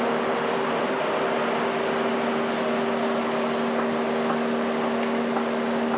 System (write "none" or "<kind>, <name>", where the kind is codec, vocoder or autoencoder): none